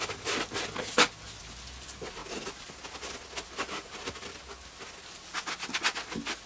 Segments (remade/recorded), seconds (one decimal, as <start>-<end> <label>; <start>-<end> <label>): 0.0-6.5 recorded